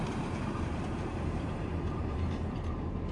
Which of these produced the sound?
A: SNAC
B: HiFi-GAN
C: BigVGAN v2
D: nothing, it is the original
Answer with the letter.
C